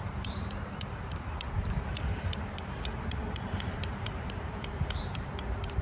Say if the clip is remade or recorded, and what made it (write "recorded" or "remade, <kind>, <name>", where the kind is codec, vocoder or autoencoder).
remade, vocoder, BigVGAN v2